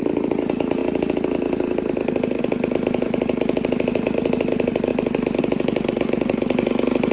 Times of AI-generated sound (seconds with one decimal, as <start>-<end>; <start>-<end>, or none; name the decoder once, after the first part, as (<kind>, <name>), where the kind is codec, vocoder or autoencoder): none